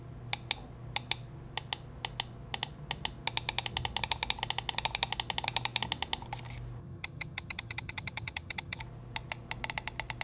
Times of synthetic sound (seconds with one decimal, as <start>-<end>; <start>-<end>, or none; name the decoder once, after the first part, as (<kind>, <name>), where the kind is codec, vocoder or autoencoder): 6.8-8.8 (vocoder, HiFi-GAN)